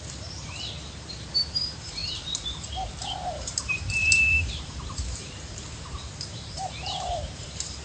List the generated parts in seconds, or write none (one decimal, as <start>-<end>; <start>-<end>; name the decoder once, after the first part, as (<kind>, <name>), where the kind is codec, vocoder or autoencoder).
0.0-2.0 (vocoder, BigVGAN v2); 3.1-7.8